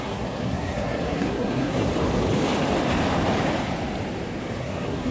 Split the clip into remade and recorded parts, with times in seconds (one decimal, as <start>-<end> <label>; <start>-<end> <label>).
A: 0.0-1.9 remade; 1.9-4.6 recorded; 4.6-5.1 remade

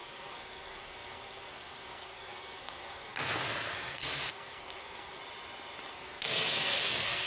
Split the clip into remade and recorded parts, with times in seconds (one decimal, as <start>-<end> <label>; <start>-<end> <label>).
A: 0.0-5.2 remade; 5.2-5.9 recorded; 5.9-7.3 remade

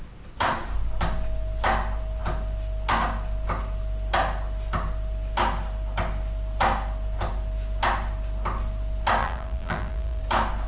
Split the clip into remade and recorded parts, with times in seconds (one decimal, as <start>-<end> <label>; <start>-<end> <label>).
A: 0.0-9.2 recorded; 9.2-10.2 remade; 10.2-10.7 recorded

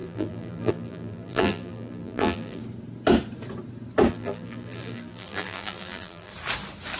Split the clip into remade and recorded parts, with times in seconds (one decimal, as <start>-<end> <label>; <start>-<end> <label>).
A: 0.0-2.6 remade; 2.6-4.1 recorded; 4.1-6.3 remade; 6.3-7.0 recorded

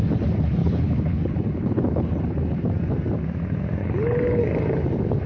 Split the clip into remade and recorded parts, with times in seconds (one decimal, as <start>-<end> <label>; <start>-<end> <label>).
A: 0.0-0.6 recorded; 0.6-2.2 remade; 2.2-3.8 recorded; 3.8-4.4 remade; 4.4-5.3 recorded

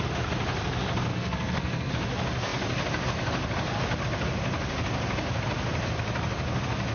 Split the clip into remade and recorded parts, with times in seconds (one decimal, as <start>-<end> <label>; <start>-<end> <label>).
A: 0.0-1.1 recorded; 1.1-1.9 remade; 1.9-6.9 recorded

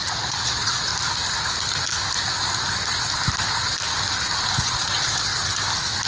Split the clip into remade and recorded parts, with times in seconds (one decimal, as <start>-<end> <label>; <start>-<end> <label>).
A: 0.0-0.9 remade; 0.9-4.6 recorded; 4.6-5.3 remade; 5.3-6.1 recorded

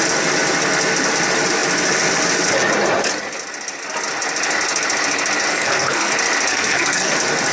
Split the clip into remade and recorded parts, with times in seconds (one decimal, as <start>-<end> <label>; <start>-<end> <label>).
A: 0.0-5.5 recorded; 5.5-6.1 remade; 6.1-6.5 recorded; 6.5-7.1 remade; 7.1-7.5 recorded